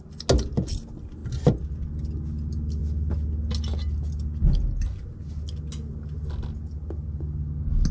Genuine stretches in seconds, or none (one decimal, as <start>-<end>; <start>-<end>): 0.0-7.9